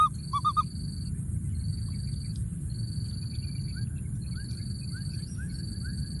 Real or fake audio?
real